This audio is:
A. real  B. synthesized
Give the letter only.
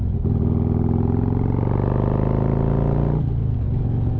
A